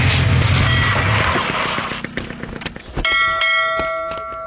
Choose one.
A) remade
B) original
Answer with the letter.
B